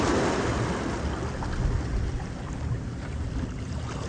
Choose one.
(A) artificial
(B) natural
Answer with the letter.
B